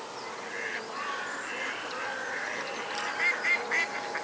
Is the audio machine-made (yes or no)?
no